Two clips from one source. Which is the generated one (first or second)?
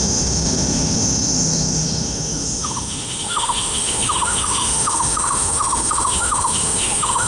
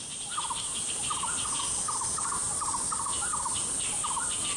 first